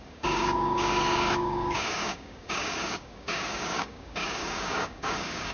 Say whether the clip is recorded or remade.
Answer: remade